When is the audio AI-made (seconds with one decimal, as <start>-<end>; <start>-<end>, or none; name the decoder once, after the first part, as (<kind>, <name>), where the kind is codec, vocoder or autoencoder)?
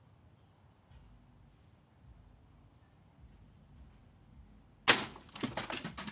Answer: none